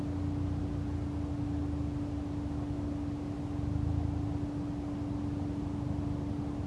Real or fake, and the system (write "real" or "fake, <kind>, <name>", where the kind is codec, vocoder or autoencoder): real